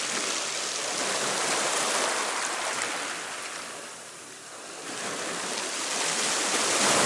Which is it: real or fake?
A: real